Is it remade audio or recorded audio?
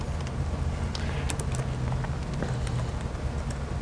recorded